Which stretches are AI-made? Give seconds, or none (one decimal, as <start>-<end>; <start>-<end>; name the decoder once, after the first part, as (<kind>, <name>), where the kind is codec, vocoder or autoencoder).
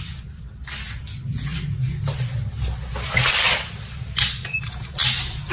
none